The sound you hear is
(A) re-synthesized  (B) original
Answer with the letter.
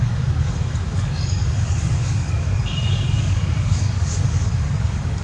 A